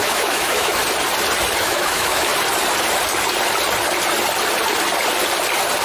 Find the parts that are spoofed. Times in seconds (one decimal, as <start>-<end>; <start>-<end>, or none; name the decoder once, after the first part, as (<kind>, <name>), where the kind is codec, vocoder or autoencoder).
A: 0.0-0.8 (autoencoder, DAC-VAE); 1.6-2.3